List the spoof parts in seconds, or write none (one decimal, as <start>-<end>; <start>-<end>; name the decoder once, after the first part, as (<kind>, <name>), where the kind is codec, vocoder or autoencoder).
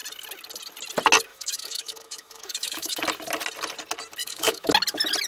1.3-3.0 (autoencoder, DAC-VAE); 4.2-4.7